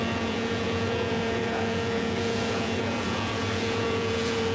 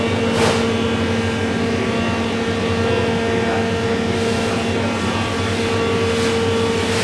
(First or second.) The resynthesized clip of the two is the first